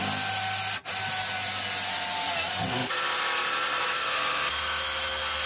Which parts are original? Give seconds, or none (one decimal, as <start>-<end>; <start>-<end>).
0.0-5.5